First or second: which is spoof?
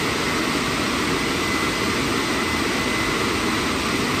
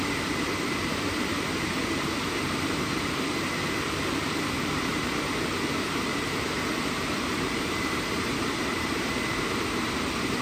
second